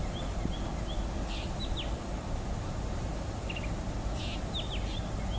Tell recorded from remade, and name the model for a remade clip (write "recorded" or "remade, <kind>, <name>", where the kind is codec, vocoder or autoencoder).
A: recorded